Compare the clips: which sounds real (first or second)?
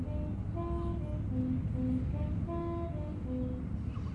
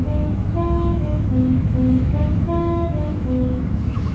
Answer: first